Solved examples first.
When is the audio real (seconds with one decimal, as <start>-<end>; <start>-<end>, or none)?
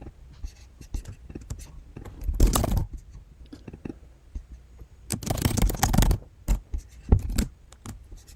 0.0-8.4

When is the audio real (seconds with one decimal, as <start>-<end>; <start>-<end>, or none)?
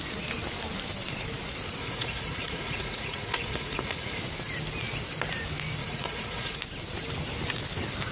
0.0-1.8; 4.2-5.8; 6.6-8.1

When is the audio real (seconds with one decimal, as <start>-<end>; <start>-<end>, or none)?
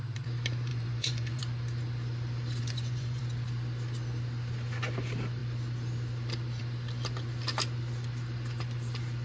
0.0-0.7; 1.4-2.6; 3.2-9.2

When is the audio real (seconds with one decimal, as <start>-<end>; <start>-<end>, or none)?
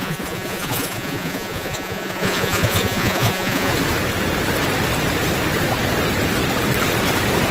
3.7-7.5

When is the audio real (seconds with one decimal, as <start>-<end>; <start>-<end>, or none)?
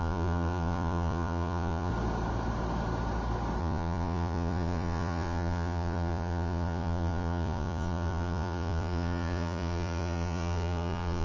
1.9-3.6